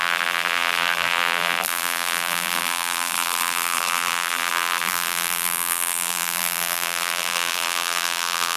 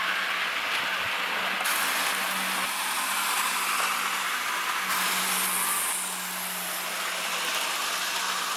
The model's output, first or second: first